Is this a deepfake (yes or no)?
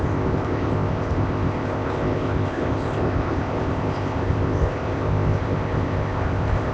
yes